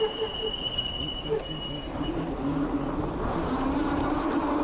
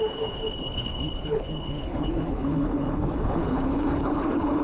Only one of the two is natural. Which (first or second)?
first